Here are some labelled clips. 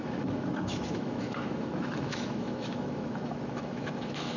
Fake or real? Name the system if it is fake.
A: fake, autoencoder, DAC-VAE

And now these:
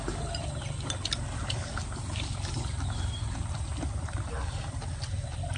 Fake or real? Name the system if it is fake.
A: real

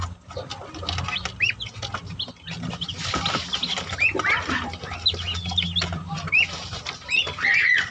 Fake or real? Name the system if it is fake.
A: real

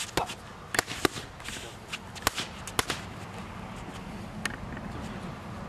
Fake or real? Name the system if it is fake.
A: real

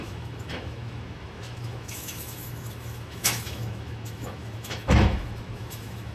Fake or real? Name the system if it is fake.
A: fake, autoencoder, DAC-VAE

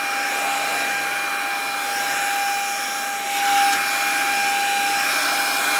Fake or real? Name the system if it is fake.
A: real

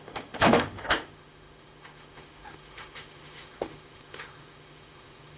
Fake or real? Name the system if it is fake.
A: fake, autoencoder, DAC-VAE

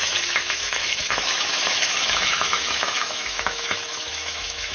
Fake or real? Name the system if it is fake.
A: fake, autoencoder, DAC-VAE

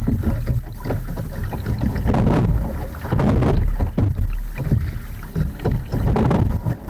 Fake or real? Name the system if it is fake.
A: real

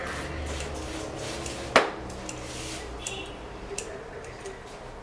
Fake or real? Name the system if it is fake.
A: real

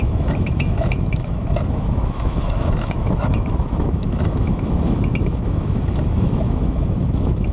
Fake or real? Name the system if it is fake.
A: fake, autoencoder, DAC-VAE